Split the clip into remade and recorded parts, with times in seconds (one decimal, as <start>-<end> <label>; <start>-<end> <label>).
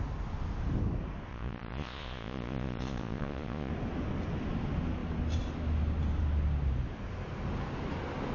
0.0-1.3 recorded; 1.3-3.7 remade; 3.7-8.3 recorded